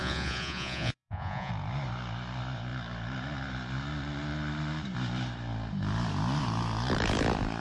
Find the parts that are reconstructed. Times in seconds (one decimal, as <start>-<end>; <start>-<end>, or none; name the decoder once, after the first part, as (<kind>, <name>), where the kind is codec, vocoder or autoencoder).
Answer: 0.0-1.5 (vocoder, Vocos)